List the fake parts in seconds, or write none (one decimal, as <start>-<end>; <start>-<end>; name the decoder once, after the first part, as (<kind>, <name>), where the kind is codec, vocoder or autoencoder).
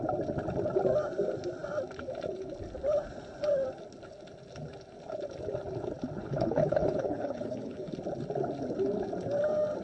6.2-7.9 (codec, HILCodec)